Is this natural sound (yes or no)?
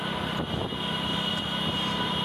yes